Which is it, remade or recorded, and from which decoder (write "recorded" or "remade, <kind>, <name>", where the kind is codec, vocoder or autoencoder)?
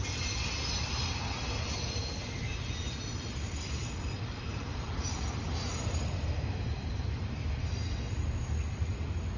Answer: recorded